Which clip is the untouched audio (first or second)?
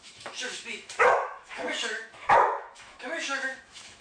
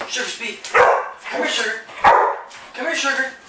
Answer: second